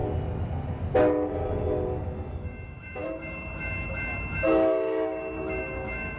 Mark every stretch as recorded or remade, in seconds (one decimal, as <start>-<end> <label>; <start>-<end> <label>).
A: 0.0-2.3 recorded; 2.3-6.2 remade